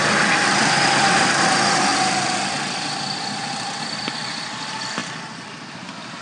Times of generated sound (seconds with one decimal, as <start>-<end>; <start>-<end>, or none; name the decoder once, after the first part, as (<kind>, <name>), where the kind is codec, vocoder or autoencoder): 1.9-3.5 (vocoder, BigVGAN v2); 5.0-5.7